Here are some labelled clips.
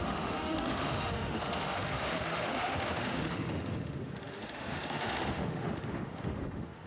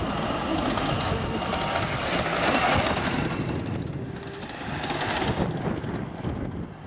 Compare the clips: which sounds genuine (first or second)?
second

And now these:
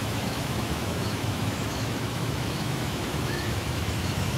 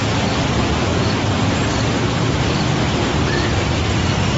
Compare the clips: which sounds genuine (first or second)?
second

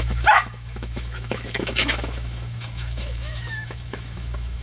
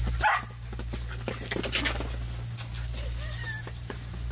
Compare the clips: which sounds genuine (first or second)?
second